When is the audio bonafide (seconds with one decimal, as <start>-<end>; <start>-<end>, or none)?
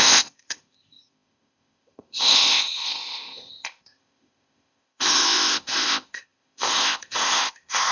none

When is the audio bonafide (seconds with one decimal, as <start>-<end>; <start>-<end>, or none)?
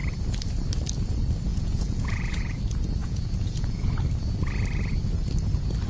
0.0-1.5; 2.6-3.0; 3.9-5.9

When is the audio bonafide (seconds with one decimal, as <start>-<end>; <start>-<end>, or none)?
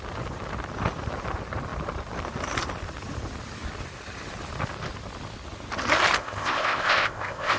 0.0-6.2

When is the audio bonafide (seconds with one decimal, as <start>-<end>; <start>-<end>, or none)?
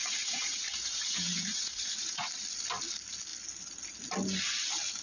2.3-5.0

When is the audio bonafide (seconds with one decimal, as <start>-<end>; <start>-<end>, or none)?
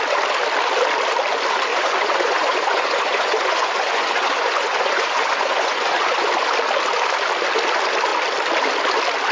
0.0-1.7; 6.3-9.3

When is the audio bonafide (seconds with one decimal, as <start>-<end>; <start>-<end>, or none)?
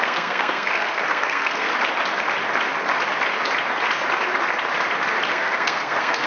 1.7-5.3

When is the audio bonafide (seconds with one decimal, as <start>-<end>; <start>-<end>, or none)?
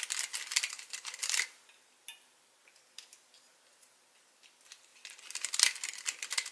0.0-1.2; 2.0-6.5